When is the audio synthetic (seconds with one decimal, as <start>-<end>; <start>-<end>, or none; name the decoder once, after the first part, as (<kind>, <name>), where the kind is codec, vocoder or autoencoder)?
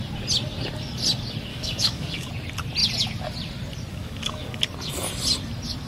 1.5-2.3 (codec, DAC); 3.9-4.6